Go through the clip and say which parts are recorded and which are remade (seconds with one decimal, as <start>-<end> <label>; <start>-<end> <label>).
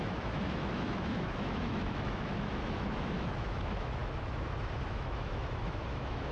0.0-6.3 remade